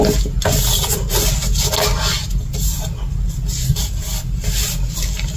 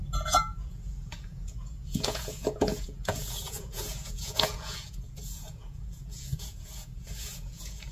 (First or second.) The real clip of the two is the first